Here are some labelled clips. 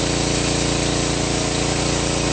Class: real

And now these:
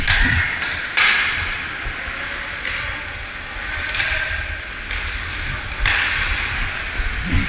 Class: real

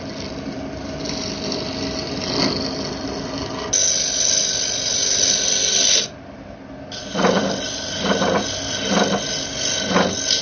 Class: real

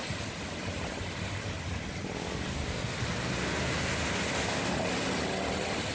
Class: real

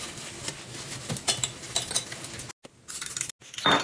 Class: real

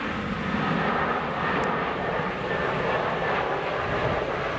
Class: real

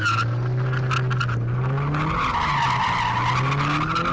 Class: real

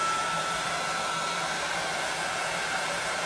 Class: real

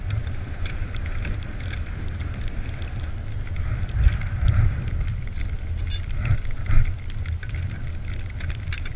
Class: real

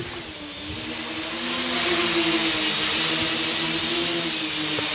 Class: real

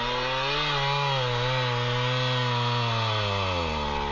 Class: real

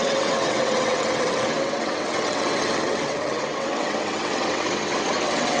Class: fake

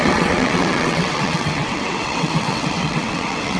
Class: fake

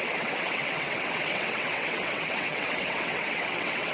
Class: fake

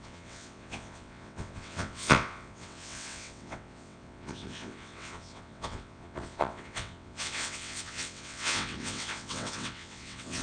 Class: fake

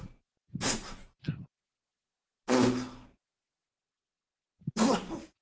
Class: real